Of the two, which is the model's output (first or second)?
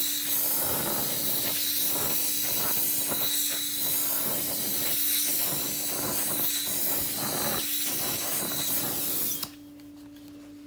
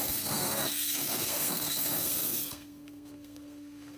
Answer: second